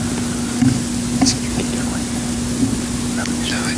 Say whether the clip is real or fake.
real